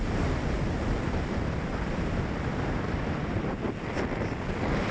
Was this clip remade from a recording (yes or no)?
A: no